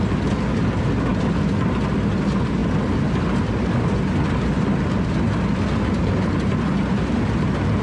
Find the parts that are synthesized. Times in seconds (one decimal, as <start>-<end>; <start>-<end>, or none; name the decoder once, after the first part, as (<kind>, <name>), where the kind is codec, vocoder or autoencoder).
none